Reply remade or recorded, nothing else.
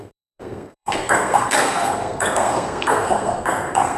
remade